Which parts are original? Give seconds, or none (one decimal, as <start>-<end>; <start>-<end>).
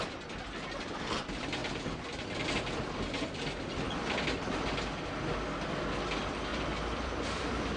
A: 0.0-6.5